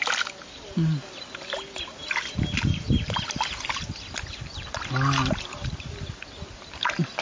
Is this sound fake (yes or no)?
no